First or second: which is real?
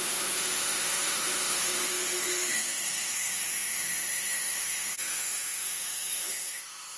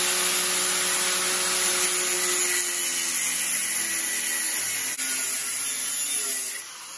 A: second